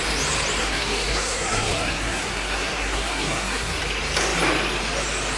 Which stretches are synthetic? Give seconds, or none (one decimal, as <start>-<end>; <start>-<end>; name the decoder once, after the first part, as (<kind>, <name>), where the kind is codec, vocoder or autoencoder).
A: 0.6-3.8 (codec, SNAC)